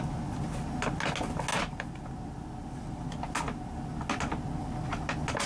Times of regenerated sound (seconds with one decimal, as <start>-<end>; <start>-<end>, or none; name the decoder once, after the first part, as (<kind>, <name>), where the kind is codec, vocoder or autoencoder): none

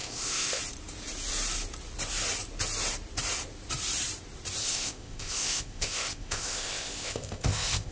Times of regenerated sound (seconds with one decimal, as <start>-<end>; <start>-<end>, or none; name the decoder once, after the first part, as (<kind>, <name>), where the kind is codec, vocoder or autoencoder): 0.0-0.6 (codec, ZipCodec); 4.6-7.9